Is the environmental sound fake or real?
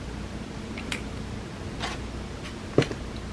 real